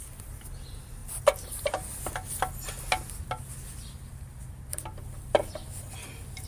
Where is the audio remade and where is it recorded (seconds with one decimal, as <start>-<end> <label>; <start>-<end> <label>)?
0.0-6.5 recorded